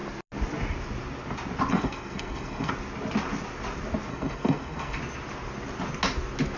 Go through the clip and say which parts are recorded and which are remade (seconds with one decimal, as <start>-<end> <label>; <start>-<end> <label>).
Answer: 0.0-1.7 recorded; 1.7-2.7 remade; 2.7-4.1 recorded; 4.1-5.0 remade; 5.0-6.6 recorded